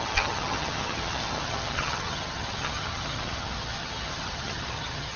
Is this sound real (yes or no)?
no